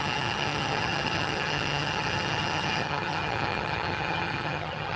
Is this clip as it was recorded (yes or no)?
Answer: no